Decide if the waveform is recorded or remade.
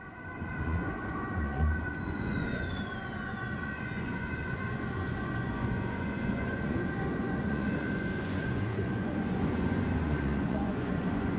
remade